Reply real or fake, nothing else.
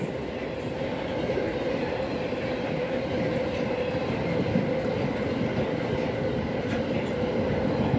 real